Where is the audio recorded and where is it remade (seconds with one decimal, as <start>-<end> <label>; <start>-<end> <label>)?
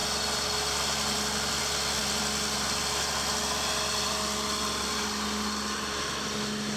0.0-6.8 recorded